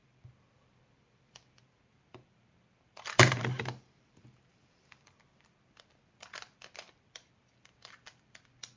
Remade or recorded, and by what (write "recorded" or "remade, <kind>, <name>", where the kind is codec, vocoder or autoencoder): remade, vocoder, BigVGAN v2